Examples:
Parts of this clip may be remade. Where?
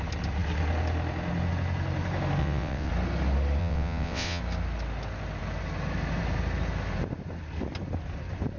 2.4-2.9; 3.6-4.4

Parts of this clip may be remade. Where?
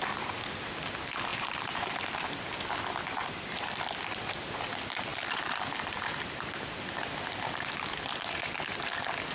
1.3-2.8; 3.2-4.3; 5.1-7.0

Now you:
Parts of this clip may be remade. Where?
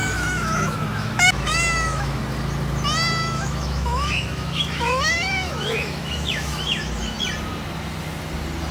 0.0-2.2; 3.2-6.9